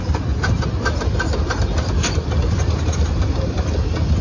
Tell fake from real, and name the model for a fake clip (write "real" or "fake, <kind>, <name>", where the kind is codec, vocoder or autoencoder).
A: real